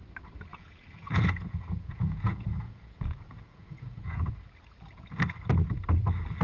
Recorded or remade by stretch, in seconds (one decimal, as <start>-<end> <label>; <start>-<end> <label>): 0.0-0.5 recorded; 0.5-4.3 remade; 4.3-6.4 recorded